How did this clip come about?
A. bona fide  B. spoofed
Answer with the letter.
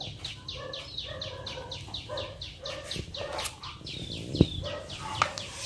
A